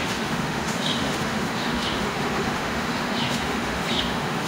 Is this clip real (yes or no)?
no